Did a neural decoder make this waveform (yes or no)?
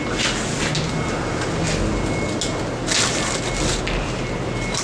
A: no